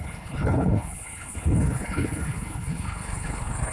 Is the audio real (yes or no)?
no